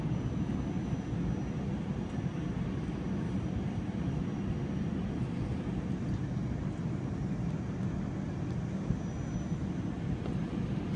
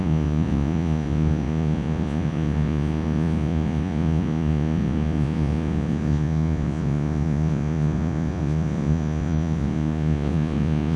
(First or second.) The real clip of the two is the first